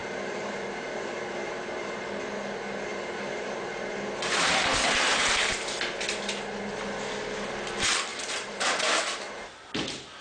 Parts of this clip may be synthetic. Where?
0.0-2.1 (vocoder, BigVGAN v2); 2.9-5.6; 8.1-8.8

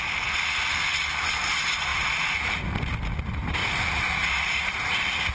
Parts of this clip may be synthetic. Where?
1.9-3.0 (vocoder, BigVGAN v2)

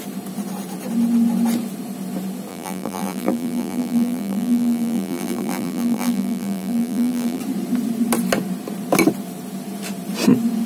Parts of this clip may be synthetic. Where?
2.5-7.4 (vocoder, BigVGAN v2)